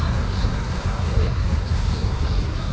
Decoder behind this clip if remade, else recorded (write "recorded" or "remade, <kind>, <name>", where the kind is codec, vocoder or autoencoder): remade, codec, SNAC